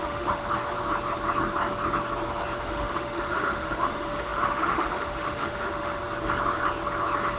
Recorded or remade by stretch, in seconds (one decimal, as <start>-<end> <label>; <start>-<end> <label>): 0.0-0.4 remade; 0.4-2.6 recorded; 2.6-6.0 remade; 6.0-7.4 recorded